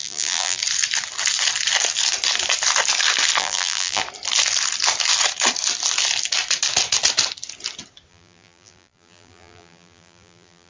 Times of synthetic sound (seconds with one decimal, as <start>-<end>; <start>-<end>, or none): 0.0-0.6; 3.4-4.0; 8.1-10.7